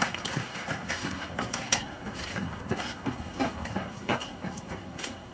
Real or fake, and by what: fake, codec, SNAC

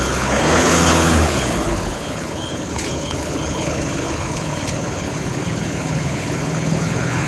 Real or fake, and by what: fake, codec, HILCodec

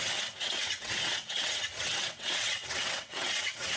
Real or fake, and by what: fake, vocoder, WaveNeXt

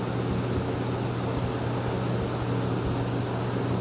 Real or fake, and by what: real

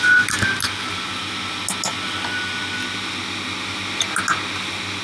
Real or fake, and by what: real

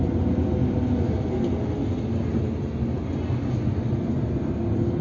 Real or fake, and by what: real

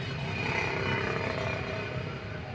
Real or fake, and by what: real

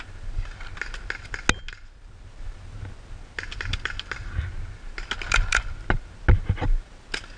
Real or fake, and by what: real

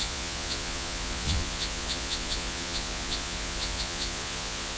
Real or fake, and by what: fake, vocoder, Vocos